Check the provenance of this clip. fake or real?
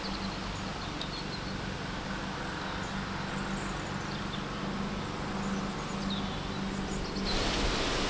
real